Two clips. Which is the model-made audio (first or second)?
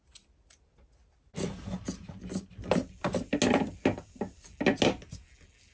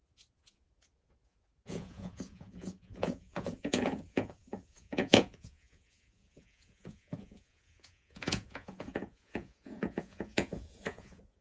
second